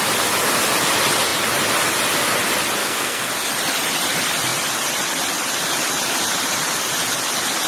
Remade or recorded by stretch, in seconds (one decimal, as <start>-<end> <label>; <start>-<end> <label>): 0.0-2.8 recorded; 2.8-3.3 remade; 3.3-7.7 recorded